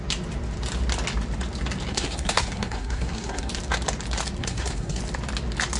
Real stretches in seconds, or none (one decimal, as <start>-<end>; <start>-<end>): 0.0-1.9; 3.5-4.4; 5.0-5.8